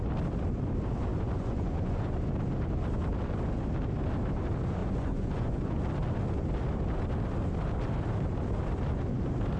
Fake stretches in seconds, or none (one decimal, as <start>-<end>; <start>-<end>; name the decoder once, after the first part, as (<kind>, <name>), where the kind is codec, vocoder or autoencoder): 1.1-2.2 (vocoder, Vocos); 4.8-5.8